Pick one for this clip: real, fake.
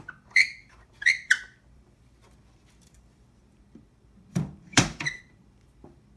fake